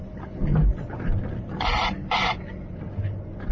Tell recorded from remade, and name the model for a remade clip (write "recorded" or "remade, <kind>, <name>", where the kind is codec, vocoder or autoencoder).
recorded